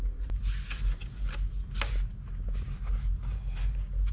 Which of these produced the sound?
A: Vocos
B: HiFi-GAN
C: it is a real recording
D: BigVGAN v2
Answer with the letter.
C